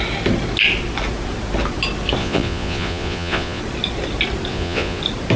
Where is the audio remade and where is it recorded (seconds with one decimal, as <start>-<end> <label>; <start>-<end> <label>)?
0.0-2.2 recorded; 2.2-3.6 remade; 3.6-4.5 recorded; 4.5-5.0 remade; 5.0-5.4 recorded